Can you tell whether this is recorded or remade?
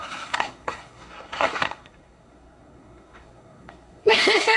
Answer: remade